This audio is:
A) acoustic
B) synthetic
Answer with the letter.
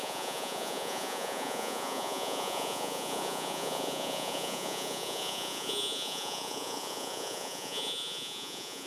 B